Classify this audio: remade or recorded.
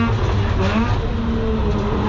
recorded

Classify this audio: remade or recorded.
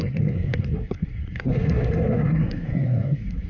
remade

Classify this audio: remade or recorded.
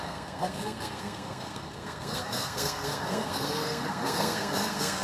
remade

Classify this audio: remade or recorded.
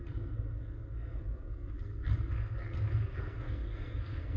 remade